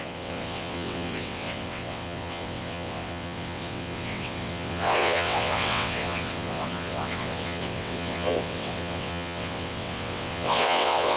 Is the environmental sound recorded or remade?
remade